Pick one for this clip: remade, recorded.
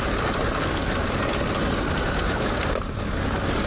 recorded